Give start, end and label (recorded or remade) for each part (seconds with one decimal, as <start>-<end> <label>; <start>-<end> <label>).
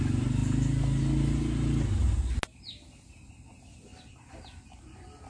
0.0-5.3 recorded